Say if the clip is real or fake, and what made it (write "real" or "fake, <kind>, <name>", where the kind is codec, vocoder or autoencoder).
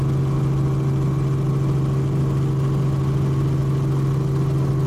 real